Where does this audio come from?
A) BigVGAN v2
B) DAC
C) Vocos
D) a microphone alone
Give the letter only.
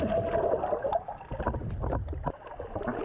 D